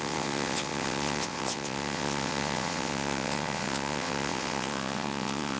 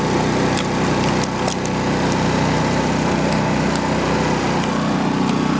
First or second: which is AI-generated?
first